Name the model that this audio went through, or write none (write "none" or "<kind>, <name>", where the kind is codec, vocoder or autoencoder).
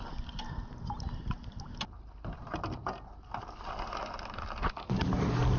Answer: none